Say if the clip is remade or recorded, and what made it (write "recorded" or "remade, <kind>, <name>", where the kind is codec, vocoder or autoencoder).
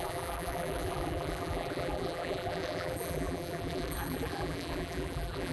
remade, vocoder, BigVGAN v2